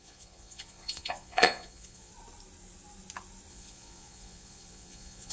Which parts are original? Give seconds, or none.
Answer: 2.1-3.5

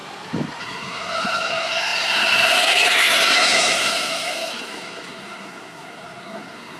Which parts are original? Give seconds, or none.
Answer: 0.0-0.6